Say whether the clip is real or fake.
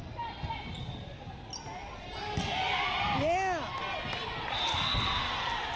real